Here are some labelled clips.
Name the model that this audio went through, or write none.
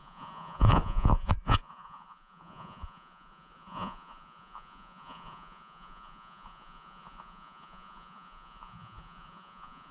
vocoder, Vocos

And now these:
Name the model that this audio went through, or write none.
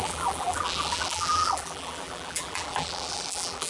vocoder, BigVGAN v2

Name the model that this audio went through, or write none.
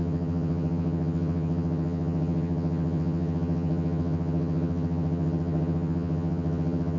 vocoder, HiFi-GAN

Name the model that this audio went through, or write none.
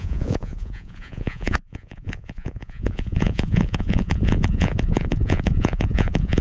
vocoder, Vocos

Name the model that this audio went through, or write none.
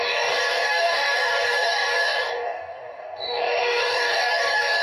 codec, DAC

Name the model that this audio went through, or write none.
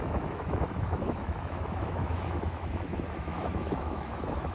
autoencoder, DAC-VAE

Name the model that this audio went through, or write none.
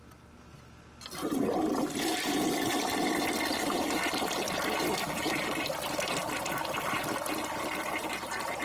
none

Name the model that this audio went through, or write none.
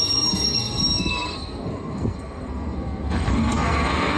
codec, SNAC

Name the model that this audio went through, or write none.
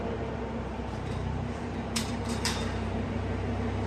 vocoder, BigVGAN v2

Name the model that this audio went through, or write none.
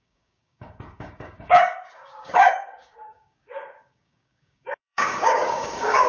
codec, DAC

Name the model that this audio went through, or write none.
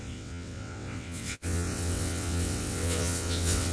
vocoder, WaveNeXt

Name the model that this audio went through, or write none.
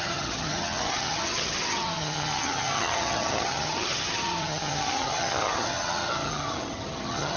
vocoder, HiFi-GAN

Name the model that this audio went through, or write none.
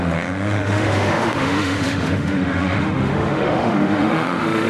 autoencoder, DAC-VAE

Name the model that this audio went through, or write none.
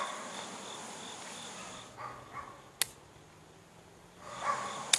none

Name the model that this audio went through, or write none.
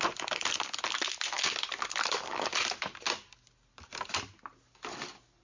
none